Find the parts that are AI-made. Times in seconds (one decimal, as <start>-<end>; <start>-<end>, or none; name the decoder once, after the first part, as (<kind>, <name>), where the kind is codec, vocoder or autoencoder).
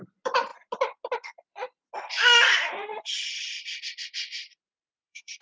2.9-5.4 (vocoder, BigVGAN v2)